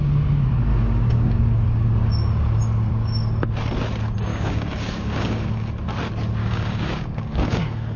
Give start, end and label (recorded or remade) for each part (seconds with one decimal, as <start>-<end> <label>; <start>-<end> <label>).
0.0-0.7 recorded; 0.7-1.9 remade; 1.9-4.3 recorded; 4.3-5.7 remade; 5.7-6.4 recorded; 6.4-8.0 remade